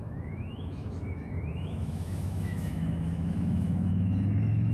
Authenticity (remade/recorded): remade